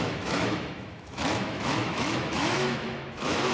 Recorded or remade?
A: remade